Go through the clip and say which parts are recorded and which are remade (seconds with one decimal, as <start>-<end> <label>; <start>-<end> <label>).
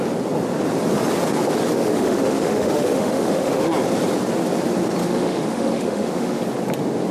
0.0-1.7 recorded; 1.7-3.7 remade; 3.7-5.0 recorded; 5.0-6.4 remade; 6.4-7.1 recorded